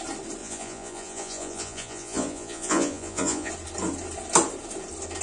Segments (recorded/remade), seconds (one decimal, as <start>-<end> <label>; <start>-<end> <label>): 0.0-0.4 recorded; 0.4-3.5 remade; 3.5-5.2 recorded